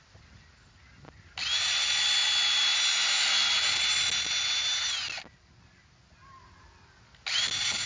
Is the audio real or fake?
real